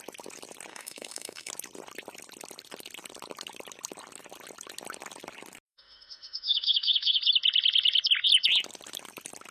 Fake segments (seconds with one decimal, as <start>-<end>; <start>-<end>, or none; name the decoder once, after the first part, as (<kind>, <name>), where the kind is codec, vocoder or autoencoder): 0.7-1.5 (autoencoder, DAC-VAE); 5.7-7.2